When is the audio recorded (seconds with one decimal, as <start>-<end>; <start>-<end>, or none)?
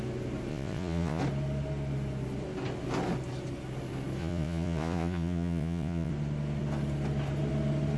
0.0-0.5; 1.2-4.2; 6.1-8.0